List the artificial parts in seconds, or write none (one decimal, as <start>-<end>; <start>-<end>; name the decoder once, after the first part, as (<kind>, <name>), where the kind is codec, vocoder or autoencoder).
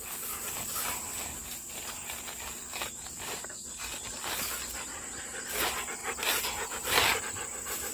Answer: none